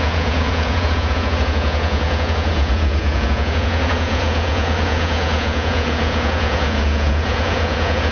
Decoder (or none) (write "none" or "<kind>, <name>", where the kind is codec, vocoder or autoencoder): vocoder, Vocos